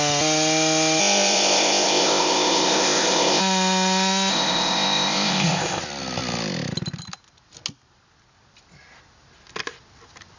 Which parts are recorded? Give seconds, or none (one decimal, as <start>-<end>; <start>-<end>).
0.0-1.0; 3.4-4.3; 5.8-10.4